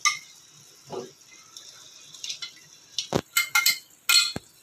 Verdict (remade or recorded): recorded